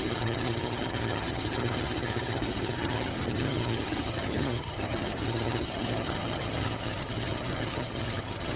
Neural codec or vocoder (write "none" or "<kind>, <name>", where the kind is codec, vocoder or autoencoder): vocoder, HiFi-GAN